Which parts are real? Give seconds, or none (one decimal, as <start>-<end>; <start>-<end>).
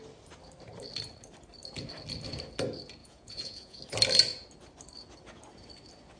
0.0-3.0; 3.8-6.2